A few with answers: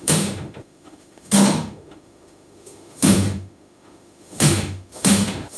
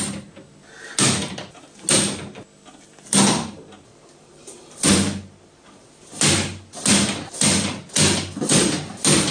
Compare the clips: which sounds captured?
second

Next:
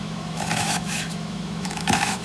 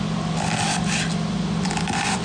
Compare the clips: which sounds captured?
second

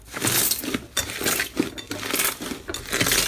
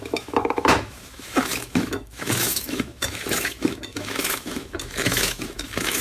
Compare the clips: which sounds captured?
first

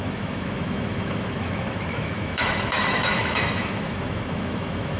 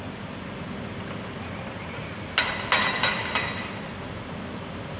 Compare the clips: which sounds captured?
second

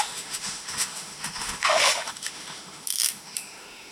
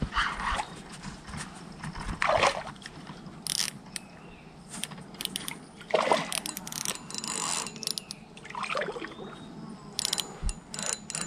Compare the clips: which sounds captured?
second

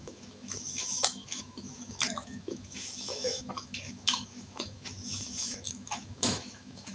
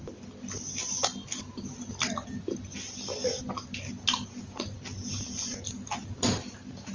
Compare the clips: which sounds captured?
second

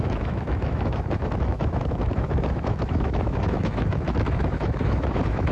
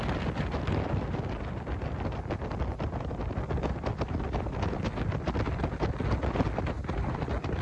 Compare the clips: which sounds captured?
second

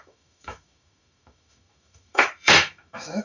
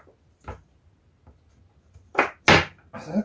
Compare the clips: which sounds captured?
second